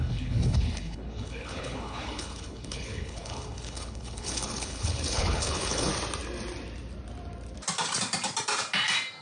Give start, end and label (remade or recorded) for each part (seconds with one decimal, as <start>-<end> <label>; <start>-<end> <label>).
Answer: 0.0-5.9 remade; 5.9-9.2 recorded